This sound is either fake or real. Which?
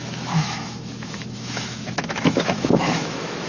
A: fake